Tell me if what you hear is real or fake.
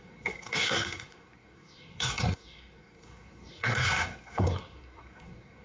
fake